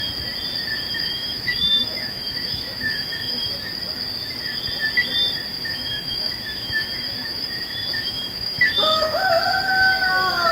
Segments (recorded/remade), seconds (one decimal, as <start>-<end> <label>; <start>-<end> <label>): 0.0-0.9 recorded; 0.9-3.5 remade; 3.5-5.5 recorded; 5.5-9.4 remade; 9.4-10.5 recorded